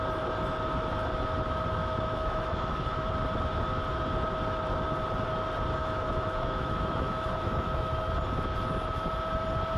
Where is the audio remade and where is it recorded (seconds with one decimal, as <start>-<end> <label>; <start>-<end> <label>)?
0.0-1.8 recorded; 1.8-3.1 remade; 3.1-5.8 recorded; 5.8-8.1 remade; 8.1-9.8 recorded